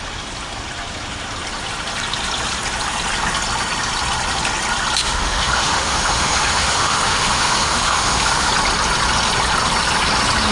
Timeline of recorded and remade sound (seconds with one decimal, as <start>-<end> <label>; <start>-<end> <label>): 0.0-5.0 recorded; 5.0-8.5 remade; 8.5-10.5 recorded